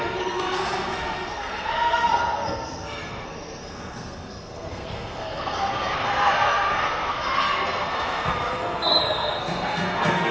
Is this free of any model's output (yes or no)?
no